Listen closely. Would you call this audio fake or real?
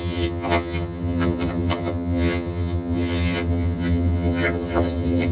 fake